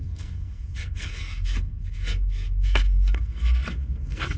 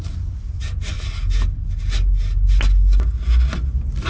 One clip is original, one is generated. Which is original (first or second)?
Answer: second